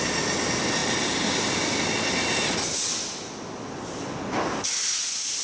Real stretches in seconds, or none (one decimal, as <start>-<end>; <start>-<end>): 0.0-5.4